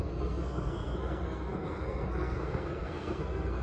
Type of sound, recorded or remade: remade